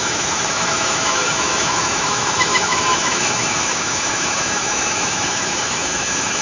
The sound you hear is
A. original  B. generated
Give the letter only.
B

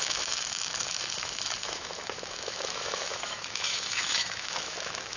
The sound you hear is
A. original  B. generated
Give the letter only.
B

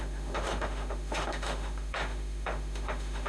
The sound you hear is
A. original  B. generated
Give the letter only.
B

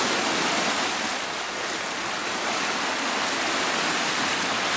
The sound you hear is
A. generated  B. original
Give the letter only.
B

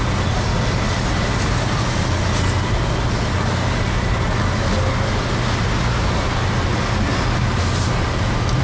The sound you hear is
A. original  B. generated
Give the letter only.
A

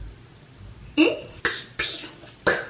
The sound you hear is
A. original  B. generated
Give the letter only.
A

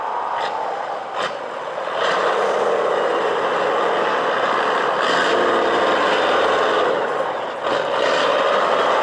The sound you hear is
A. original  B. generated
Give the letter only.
A